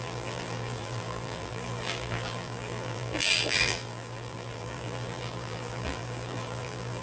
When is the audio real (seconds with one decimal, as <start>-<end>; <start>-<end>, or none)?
none